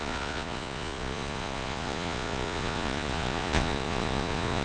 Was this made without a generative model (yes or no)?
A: no